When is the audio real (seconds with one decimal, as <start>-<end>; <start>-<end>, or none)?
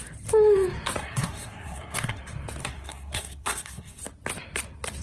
0.0-1.0; 2.2-2.6; 4.0-5.0